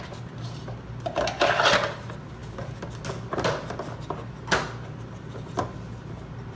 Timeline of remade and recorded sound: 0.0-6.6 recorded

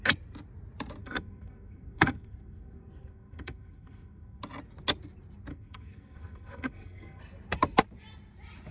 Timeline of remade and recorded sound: 0.0-1.0 recorded; 1.0-4.4 remade; 4.4-5.5 recorded; 5.5-7.2 remade; 7.2-8.7 recorded